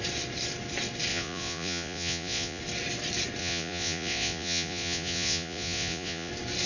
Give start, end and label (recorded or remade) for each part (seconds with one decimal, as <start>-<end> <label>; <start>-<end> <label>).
0.0-1.1 recorded; 1.1-2.6 remade; 2.6-3.4 recorded; 3.4-6.3 remade; 6.3-6.7 recorded